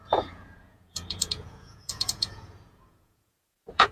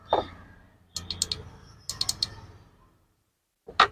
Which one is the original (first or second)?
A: second